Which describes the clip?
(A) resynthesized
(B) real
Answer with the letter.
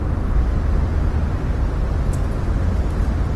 B